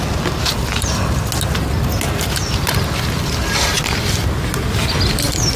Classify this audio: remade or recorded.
recorded